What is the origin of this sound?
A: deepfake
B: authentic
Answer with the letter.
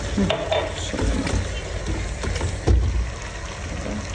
B